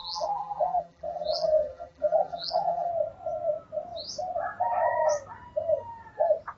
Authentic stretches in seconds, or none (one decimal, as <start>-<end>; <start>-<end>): 2.9-6.6